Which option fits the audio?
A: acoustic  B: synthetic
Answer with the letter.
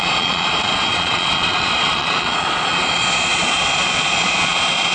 B